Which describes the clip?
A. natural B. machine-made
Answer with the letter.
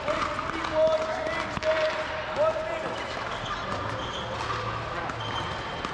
A